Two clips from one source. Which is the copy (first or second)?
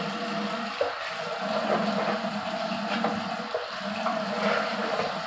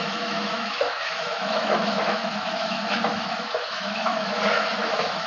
second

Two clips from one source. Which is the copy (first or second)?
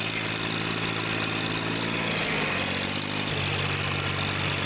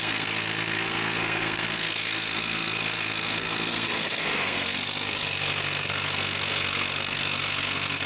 second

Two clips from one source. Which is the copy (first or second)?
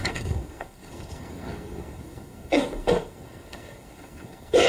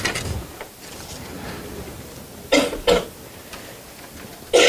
first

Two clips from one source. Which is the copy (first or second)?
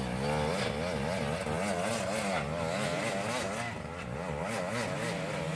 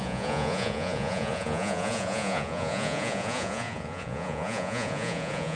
second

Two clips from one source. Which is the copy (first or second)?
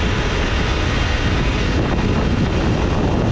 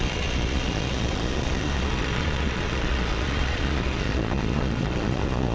second